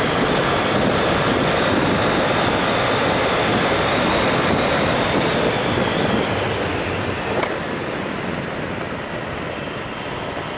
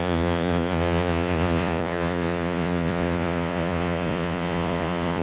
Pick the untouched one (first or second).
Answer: first